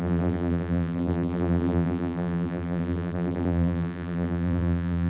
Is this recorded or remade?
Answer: remade